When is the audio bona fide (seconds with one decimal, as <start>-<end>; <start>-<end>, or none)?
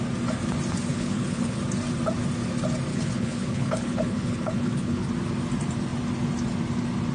0.0-0.9; 1.6-2.9; 5.1-7.1